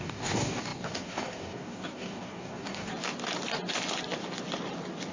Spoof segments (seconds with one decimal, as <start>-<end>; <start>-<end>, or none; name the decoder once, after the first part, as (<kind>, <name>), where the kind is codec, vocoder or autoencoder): 0.0-2.9 (codec, DAC)